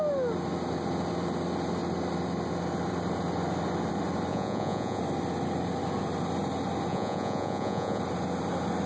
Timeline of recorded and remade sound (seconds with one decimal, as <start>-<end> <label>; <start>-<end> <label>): 0.0-4.3 recorded; 4.3-5.0 remade; 5.0-6.9 recorded; 6.9-8.0 remade; 8.0-8.9 recorded

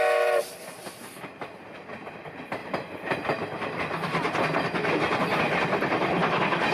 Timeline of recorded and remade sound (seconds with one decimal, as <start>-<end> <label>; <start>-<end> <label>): 0.0-6.7 recorded

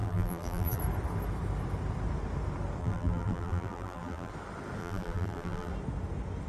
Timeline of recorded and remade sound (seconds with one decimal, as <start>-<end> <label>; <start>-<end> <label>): 0.0-0.8 remade; 0.8-2.8 recorded; 2.8-4.3 remade; 4.3-4.8 recorded; 4.8-5.7 remade; 5.7-6.5 recorded

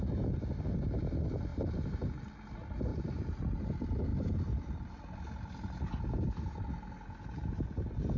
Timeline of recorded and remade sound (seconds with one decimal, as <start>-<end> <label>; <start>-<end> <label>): 0.0-1.5 recorded; 1.5-2.3 remade; 2.3-2.9 recorded; 2.9-3.4 remade; 3.4-8.2 recorded

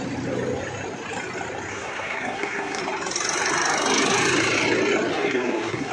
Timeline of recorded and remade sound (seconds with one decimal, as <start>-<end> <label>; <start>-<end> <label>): 0.0-1.7 recorded; 1.7-2.8 remade; 2.8-5.1 recorded; 5.1-5.9 remade

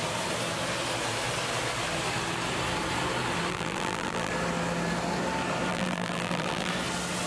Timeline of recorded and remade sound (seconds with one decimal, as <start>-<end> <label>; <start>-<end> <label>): 0.0-3.5 recorded; 3.5-4.3 remade; 4.3-5.7 recorded; 5.7-6.7 remade; 6.7-7.3 recorded

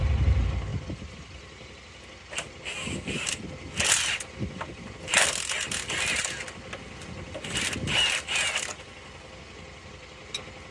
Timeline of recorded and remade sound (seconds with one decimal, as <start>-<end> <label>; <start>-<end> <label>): 0.0-10.7 recorded

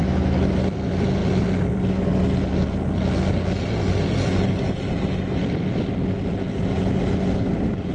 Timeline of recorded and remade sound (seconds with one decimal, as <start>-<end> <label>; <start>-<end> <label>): 0.0-6.4 recorded; 6.4-6.9 remade; 6.9-7.9 recorded